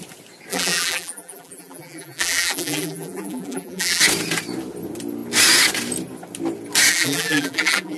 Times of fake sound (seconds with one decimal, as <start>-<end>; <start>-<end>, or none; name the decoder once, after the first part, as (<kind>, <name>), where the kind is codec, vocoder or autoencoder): 0.5-4.0 (vocoder, BigVGAN v2); 6.9-8.0